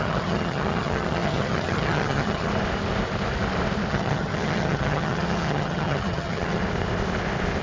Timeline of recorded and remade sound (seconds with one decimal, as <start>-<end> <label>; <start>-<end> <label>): 0.0-2.5 remade; 2.5-3.9 recorded; 3.9-6.6 remade; 6.6-7.6 recorded